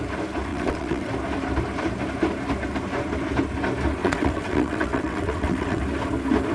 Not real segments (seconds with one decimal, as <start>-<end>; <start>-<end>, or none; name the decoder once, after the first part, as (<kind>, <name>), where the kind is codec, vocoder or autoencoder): 0.5-1.1 (vocoder, WaveNeXt); 4.0-5.8